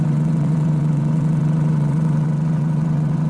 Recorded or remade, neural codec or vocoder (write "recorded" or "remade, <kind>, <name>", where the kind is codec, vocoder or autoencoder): remade, vocoder, WaveNeXt